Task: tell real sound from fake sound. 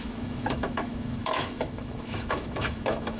fake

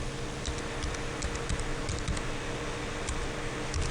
real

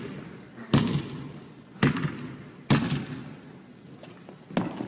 real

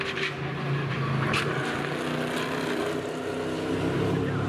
real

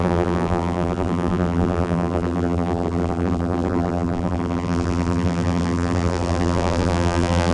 fake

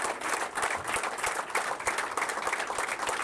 real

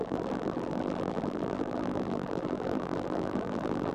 fake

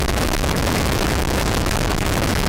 fake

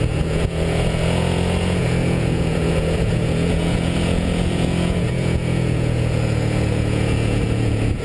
fake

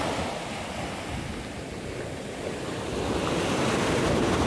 real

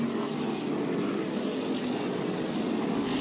real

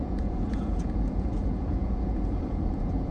fake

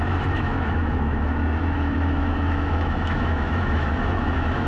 fake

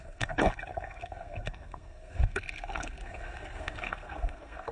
fake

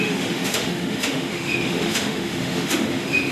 fake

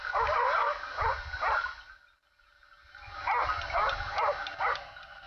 real